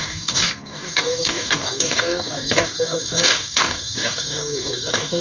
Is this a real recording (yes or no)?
no